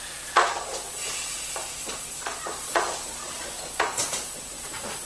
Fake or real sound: fake